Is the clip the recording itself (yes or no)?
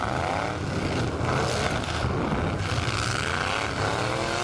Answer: yes